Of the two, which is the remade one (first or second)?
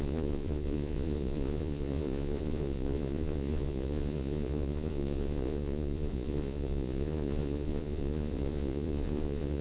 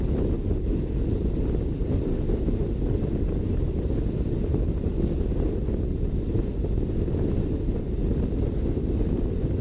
first